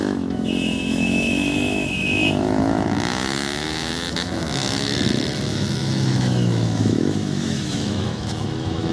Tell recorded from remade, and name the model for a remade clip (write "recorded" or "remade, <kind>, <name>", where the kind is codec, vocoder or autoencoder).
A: remade, autoencoder, DAC-VAE